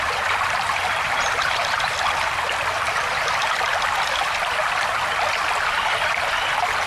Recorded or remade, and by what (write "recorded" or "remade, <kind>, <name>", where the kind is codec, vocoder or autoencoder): recorded